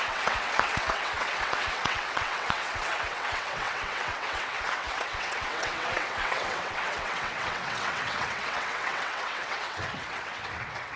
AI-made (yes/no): yes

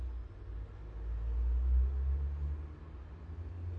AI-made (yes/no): no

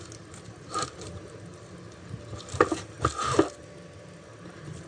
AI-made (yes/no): no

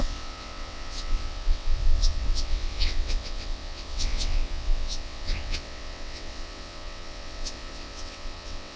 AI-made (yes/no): yes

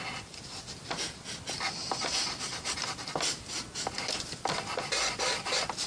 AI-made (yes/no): no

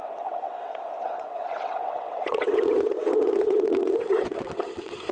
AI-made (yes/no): yes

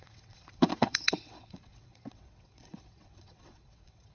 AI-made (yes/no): yes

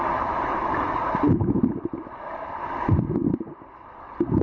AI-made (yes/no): no